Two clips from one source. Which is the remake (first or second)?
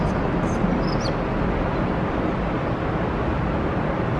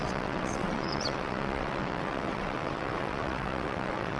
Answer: second